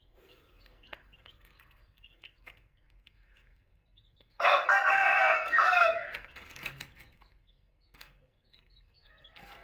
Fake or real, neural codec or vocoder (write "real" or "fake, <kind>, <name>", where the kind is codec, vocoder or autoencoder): fake, codec, SNAC